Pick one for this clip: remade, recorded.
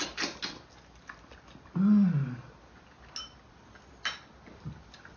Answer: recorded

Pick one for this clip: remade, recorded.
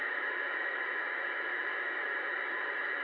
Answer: remade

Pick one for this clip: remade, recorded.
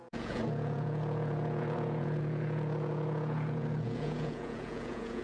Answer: remade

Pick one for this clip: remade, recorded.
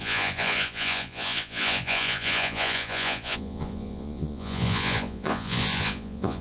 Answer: remade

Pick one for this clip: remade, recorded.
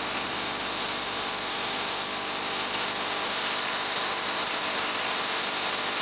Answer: recorded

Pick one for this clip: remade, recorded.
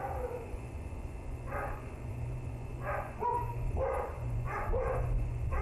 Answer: remade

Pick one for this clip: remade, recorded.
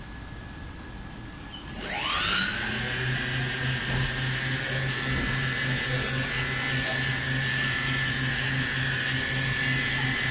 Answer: recorded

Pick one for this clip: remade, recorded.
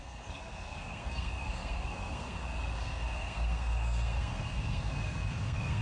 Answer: remade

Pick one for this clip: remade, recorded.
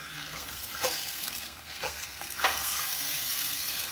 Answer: remade